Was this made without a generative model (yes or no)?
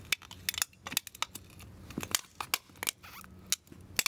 yes